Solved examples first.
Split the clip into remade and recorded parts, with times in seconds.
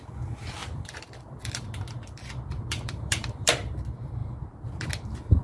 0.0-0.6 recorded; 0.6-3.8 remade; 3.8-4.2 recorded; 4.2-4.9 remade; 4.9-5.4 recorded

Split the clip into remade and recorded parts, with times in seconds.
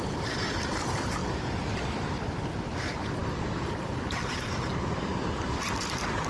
0.0-3.2 remade; 3.2-5.7 recorded; 5.7-6.3 remade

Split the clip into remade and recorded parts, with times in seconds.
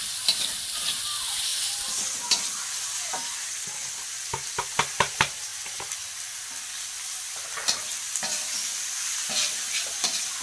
0.0-1.5 remade; 1.5-2.5 recorded; 2.5-5.5 remade; 5.5-8.0 recorded; 8.0-10.4 remade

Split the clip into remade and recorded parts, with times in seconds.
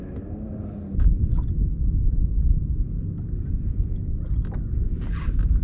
0.0-2.1 recorded; 2.1-4.9 remade; 4.9-5.6 recorded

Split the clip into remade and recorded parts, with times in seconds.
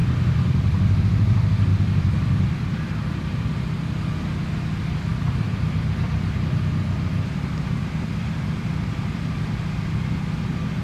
0.0-1.0 remade; 1.0-1.7 recorded; 1.7-4.0 remade; 4.0-5.1 recorded; 5.1-9.6 remade; 9.6-10.8 recorded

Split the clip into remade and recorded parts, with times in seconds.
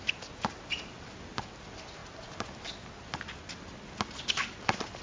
0.0-5.0 recorded